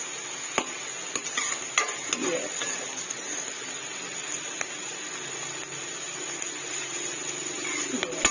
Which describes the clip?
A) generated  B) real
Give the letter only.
B